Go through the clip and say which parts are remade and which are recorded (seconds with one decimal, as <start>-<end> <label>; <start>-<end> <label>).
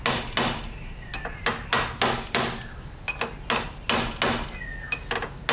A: 0.0-5.5 recorded